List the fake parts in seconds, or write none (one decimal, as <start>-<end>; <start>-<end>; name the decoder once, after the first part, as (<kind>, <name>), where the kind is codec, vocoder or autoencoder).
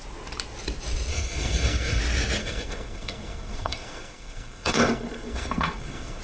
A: 1.1-2.0 (codec, SNAC); 2.4-6.2